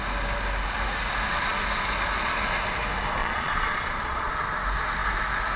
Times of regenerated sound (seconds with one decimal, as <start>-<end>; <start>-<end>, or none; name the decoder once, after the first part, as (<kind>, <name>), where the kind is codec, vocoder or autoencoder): 3.2-4.3 (vocoder, Vocos)